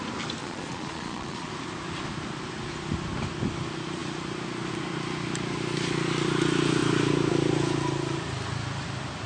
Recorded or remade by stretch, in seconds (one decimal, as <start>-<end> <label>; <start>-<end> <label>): 0.0-0.4 recorded; 0.4-1.5 remade; 1.5-9.3 recorded